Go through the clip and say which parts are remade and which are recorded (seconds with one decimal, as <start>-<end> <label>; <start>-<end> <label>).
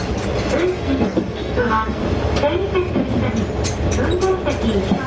0.0-0.7 recorded; 0.7-2.0 remade; 2.0-5.1 recorded